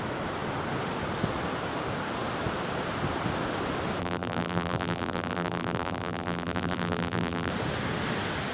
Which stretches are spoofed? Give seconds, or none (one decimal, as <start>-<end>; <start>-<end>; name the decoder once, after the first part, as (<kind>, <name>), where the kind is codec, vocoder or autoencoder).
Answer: 4.0-7.5 (vocoder, BigVGAN v2)